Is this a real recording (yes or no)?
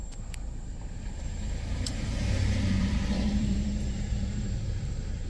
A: no